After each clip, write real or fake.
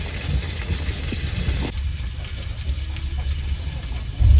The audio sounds real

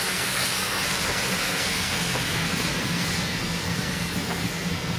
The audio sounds fake